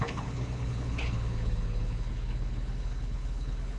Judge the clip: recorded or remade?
remade